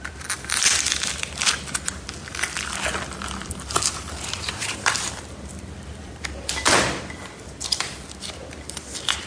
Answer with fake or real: fake